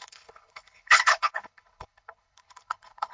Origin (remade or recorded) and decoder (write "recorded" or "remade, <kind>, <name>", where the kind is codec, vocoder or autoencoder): remade, codec, HILCodec